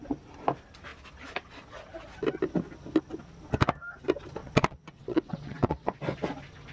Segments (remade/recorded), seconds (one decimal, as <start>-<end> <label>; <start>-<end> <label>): 0.0-4.4 recorded; 4.4-6.0 remade; 6.0-6.7 recorded